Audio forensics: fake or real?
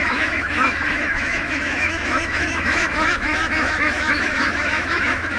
fake